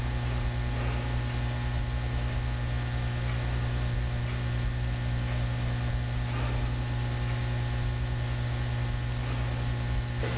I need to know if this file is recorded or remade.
recorded